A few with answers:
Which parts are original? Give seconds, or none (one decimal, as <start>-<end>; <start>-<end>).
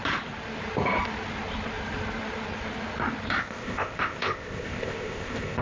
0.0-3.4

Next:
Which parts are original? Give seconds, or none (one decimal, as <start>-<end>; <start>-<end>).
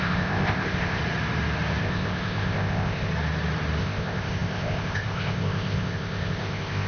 1.0-1.8; 3.1-3.8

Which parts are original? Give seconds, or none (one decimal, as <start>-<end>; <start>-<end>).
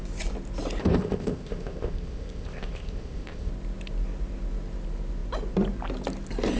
0.0-0.8; 3.5-6.6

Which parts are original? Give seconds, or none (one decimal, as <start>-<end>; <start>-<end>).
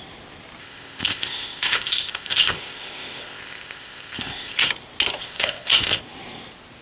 0.0-0.6; 4.7-5.2; 6.0-6.8